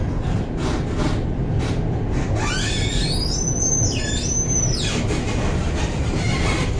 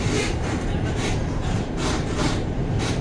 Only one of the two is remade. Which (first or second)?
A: second